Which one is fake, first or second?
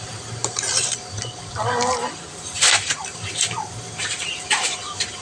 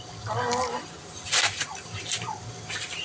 first